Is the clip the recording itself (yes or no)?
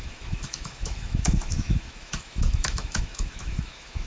no